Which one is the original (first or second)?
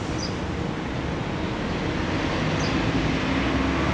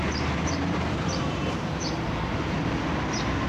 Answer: first